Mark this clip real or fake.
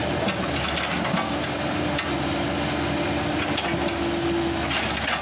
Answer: real